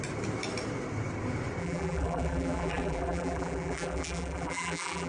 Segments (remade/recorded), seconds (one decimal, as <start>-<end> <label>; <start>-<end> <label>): 0.0-1.6 recorded; 1.6-5.1 remade